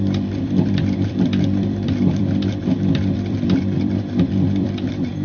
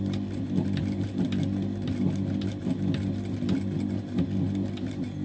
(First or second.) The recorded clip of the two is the second